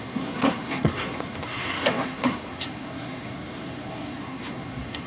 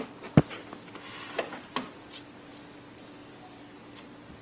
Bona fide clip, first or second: second